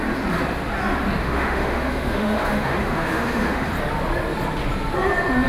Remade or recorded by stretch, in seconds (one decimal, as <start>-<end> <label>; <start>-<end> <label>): 0.0-1.2 recorded; 1.2-3.7 remade; 3.7-5.5 recorded